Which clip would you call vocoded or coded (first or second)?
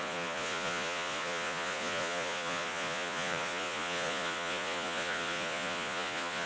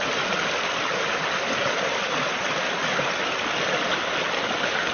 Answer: first